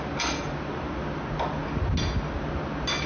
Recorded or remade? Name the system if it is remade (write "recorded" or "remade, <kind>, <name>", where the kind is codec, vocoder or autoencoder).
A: recorded